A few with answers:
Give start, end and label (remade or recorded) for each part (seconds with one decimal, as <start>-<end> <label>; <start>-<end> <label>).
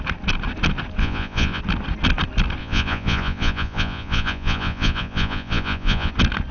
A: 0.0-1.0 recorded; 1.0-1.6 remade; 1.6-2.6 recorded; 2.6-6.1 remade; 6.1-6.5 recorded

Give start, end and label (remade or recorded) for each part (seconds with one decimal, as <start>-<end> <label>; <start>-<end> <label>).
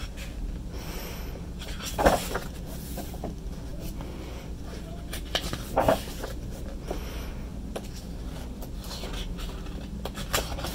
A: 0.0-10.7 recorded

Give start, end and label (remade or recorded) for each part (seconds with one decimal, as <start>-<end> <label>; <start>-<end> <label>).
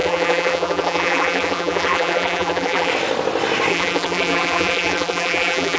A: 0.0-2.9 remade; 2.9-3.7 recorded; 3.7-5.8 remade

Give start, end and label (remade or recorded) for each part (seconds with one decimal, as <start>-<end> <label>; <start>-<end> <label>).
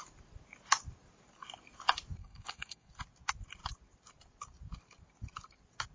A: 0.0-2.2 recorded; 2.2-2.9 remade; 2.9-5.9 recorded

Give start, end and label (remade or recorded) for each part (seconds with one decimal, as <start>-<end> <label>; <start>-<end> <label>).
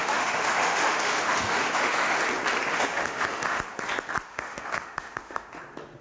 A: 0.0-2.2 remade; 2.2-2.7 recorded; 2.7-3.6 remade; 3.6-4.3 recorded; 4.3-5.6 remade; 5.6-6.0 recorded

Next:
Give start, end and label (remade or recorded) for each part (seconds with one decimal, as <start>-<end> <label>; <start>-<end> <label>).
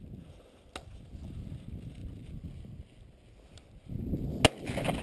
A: 0.0-5.0 recorded